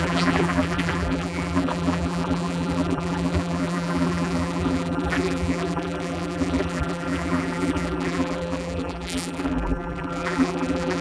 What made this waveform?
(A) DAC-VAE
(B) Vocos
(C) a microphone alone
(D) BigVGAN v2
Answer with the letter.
D